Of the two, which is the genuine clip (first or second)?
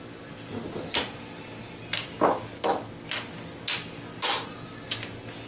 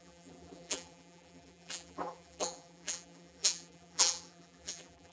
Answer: first